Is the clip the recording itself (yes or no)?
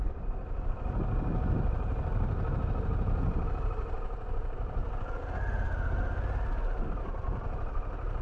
yes